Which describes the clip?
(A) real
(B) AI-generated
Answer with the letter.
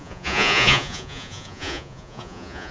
B